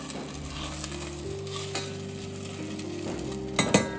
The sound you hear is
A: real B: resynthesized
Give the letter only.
A